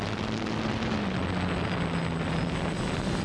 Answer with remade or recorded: recorded